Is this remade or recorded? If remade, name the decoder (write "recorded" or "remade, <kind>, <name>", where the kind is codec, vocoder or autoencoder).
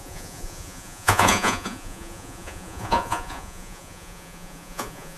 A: remade, vocoder, Vocos